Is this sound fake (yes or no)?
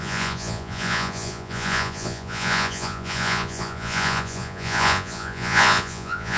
yes